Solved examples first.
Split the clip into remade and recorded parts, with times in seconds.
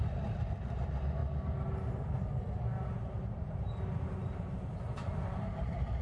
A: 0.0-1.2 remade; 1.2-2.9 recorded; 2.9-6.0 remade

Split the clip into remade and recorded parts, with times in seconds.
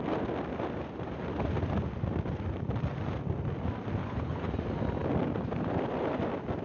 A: 0.0-4.0 recorded; 4.0-4.5 remade; 4.5-6.6 recorded